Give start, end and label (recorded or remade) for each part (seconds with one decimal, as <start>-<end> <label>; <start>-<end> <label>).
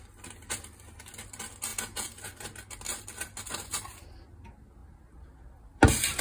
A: 0.0-1.7 recorded; 1.7-2.3 remade; 2.3-6.2 recorded